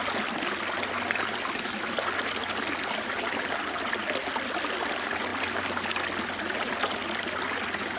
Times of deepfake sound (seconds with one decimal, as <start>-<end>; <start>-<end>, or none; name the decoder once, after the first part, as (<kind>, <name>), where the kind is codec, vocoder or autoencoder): none